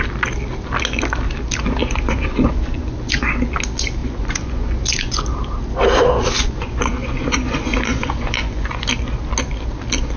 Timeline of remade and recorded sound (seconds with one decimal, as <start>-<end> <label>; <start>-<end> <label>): 0.0-1.8 recorded; 1.8-3.2 remade; 3.2-4.0 recorded; 4.0-5.2 remade; 5.2-6.4 recorded; 6.4-8.8 remade; 8.8-10.2 recorded